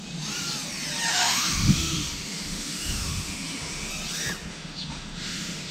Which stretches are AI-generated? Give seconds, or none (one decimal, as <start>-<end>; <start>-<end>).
1.1-3.9; 4.5-5.7